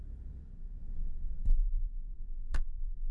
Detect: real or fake fake